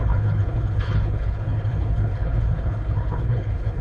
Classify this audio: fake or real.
fake